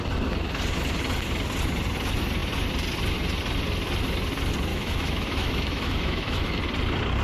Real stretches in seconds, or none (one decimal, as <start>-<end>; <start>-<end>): 0.0-4.7; 6.6-7.2